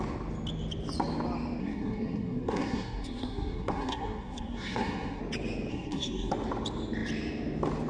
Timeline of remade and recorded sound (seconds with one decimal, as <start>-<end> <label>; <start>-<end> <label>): 0.0-1.6 recorded; 1.6-5.2 remade; 5.2-5.7 recorded; 5.7-6.3 remade; 6.3-7.9 recorded